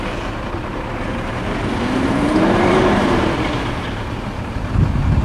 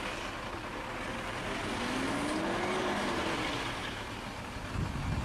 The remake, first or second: first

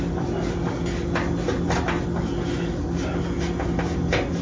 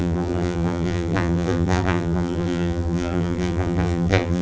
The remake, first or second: second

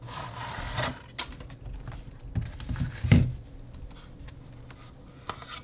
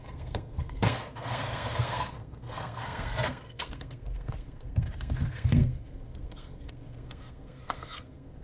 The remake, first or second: second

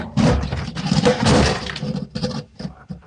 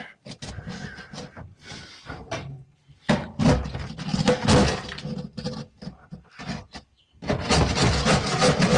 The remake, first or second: first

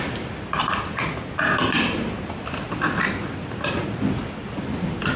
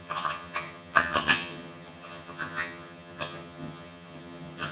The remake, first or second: second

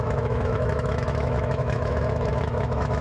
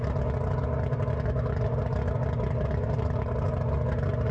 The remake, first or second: first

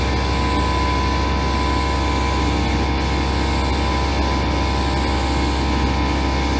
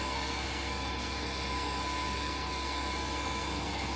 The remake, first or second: second